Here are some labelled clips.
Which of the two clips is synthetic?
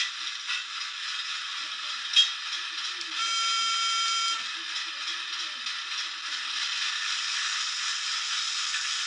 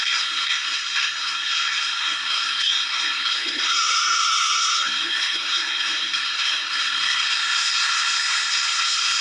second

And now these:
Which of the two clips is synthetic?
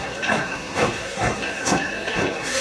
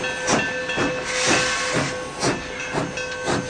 first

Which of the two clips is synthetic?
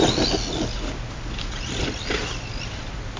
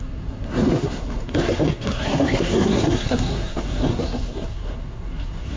second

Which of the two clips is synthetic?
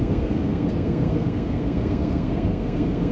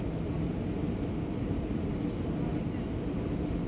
first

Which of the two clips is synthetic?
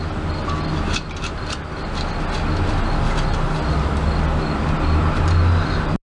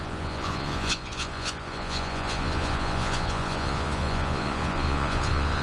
second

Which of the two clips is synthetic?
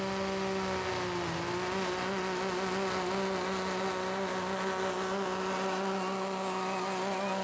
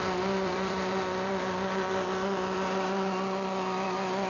second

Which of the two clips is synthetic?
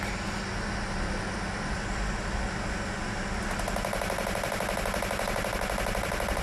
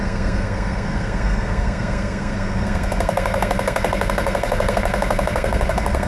second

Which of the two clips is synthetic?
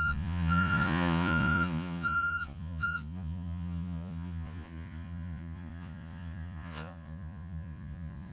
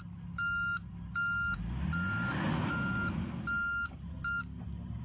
first